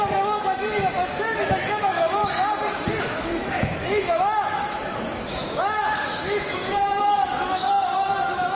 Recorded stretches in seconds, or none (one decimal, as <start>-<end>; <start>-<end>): 2.2-3.0